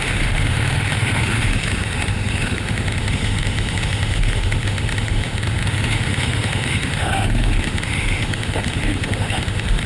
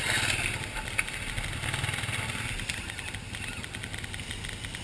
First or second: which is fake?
first